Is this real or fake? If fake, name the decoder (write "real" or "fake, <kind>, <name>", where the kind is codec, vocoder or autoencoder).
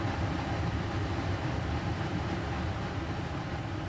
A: fake, vocoder, BigVGAN v2